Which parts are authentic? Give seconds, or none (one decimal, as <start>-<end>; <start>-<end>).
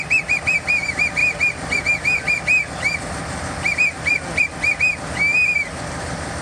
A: 0.0-6.4